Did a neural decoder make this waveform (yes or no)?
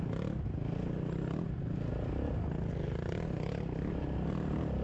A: no